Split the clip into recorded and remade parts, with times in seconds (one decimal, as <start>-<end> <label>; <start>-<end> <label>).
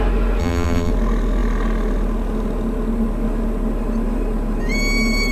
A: 0.0-0.4 recorded; 0.4-0.9 remade; 0.9-5.3 recorded